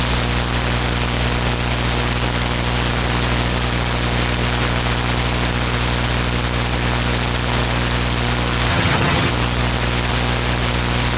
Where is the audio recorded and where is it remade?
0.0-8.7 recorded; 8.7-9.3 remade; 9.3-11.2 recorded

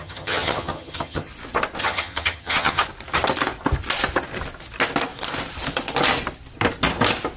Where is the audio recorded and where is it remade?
0.0-1.3 remade; 1.3-1.8 recorded; 1.8-2.8 remade; 2.8-7.4 recorded

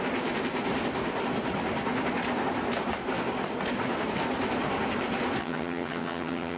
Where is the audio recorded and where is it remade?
0.0-5.4 recorded; 5.4-6.6 remade

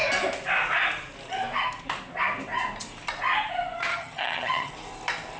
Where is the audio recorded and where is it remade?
0.0-3.9 recorded; 3.9-4.7 remade; 4.7-5.4 recorded

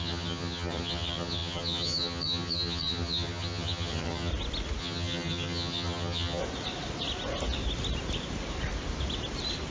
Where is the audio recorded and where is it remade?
0.0-4.3 remade; 4.3-4.8 recorded; 4.8-6.4 remade; 6.4-9.7 recorded

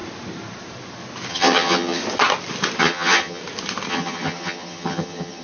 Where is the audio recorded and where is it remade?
0.0-1.3 recorded; 1.3-2.0 remade; 2.0-2.8 recorded; 2.8-3.4 remade; 3.4-3.9 recorded; 3.9-5.4 remade

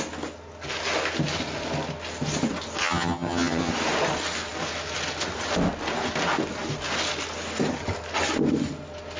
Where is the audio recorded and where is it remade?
0.0-2.8 recorded; 2.8-3.7 remade; 3.7-9.2 recorded